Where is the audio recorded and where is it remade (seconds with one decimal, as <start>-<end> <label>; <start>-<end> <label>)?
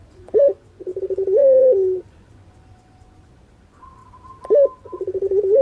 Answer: 0.0-4.0 remade; 4.0-4.8 recorded; 4.8-5.6 remade